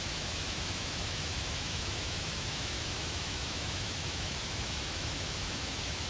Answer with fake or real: fake